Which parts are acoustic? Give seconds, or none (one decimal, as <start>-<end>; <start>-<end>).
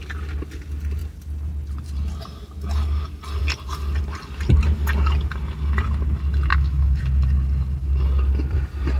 0.0-6.5; 7.0-9.0